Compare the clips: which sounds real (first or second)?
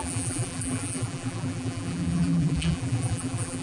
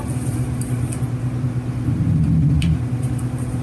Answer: second